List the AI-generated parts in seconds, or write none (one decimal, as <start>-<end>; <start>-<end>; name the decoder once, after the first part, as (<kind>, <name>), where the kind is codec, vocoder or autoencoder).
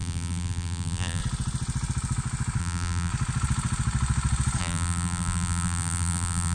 0.0-1.2 (vocoder, BigVGAN v2); 2.6-3.1; 4.6-6.5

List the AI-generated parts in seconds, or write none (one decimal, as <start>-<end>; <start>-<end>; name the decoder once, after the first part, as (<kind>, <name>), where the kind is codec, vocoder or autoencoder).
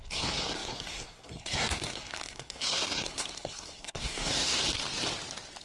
0.0-4.6 (codec, SNAC)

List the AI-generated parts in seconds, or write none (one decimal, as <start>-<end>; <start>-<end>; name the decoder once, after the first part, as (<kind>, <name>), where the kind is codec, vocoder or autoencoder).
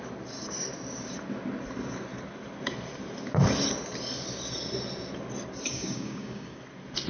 5.7-6.6 (codec, DAC)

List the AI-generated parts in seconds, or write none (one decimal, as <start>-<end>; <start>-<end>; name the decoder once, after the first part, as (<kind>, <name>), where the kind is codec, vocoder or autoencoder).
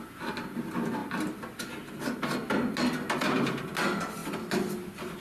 none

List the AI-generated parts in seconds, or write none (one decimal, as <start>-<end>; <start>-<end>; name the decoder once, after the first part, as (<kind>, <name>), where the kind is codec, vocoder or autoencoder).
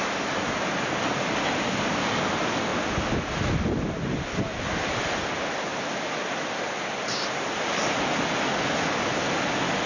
none